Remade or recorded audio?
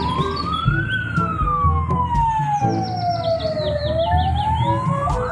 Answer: recorded